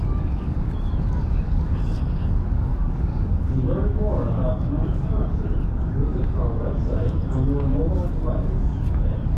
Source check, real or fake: fake